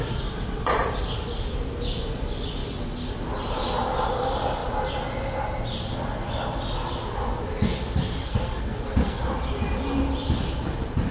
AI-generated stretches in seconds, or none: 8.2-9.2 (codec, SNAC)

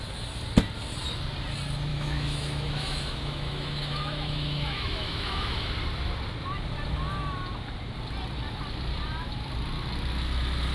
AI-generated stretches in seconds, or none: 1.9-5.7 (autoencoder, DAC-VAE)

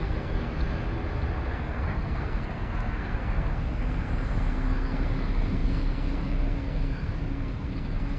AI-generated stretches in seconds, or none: 0.0-0.6 (codec, SNAC); 1.5-8.2